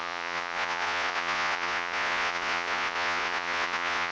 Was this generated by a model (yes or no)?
yes